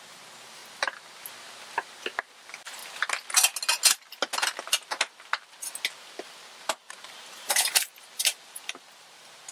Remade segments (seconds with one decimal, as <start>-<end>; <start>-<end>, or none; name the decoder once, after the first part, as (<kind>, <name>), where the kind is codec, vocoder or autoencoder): 0.0-0.6 (vocoder, BigVGAN v2); 2.2-2.8; 6.9-9.5